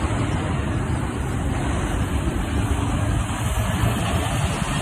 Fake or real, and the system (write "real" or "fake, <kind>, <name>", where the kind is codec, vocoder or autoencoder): real